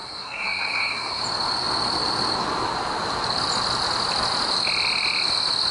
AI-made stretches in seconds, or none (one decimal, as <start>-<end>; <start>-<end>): 0.0-1.2